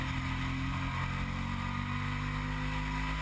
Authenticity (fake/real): real